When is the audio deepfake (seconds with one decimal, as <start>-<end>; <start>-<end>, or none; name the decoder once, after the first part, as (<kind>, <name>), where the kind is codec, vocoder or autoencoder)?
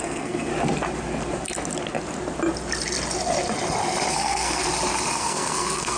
0.0-0.5 (codec, SNAC); 4.1-4.6; 5.1-6.0